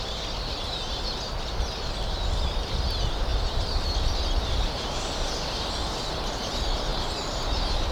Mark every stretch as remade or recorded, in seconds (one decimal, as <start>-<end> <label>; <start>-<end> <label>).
0.0-6.9 recorded; 6.9-7.4 remade; 7.4-7.9 recorded